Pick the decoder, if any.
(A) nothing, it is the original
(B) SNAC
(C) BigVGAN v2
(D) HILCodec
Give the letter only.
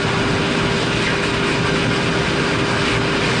A